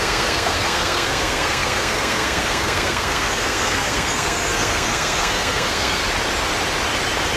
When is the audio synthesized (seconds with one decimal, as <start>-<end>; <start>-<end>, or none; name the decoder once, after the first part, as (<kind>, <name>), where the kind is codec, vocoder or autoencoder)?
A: 0.0-6.0 (codec, SNAC)